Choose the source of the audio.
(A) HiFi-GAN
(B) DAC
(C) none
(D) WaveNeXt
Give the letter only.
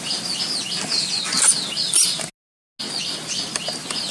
C